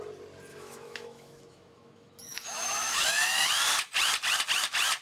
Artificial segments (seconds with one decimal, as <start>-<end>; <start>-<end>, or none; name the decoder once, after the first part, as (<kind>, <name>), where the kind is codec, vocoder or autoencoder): 0.5-3.5 (autoencoder, DAC-VAE)